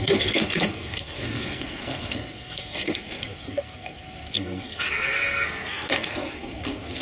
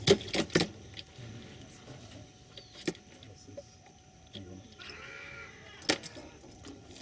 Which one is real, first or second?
second